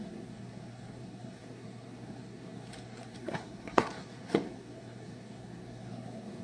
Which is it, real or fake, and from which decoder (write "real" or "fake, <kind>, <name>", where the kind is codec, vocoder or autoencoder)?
fake, codec, SNAC